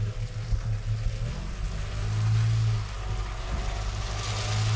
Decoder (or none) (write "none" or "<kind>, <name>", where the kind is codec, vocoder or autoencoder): none